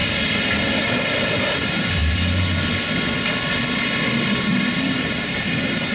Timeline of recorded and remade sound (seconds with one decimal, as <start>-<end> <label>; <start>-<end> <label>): 0.0-1.5 recorded; 1.5-2.0 remade; 2.0-3.7 recorded; 3.7-5.9 remade